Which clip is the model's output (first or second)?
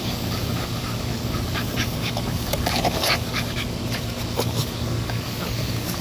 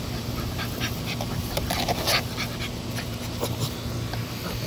first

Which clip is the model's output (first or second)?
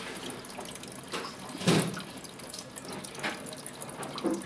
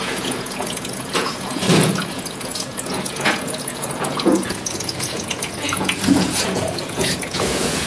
second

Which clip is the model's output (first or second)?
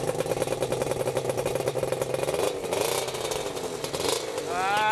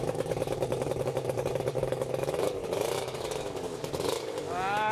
second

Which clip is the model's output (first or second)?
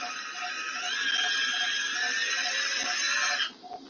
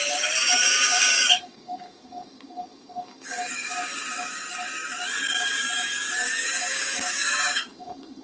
second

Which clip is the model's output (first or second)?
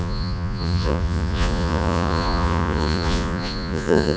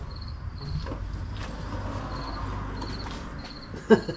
first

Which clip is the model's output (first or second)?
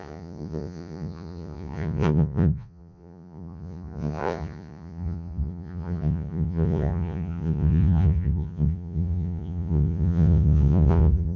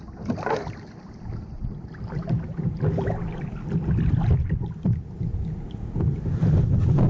first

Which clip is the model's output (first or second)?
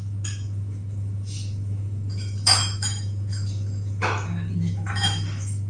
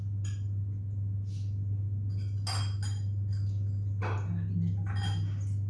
first